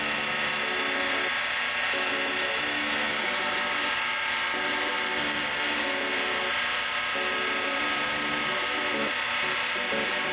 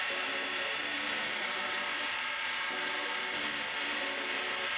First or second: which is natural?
first